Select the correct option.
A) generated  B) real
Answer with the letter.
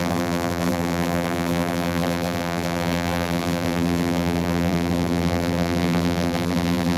A